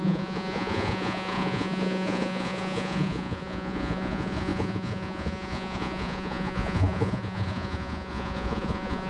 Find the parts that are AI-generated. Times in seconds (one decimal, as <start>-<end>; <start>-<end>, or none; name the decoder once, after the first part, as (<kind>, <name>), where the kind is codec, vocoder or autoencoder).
0.0-9.1 (vocoder, Vocos)